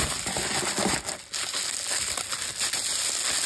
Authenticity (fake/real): real